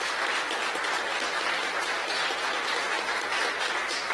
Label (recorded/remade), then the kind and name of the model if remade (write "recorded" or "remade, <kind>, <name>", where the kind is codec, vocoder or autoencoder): recorded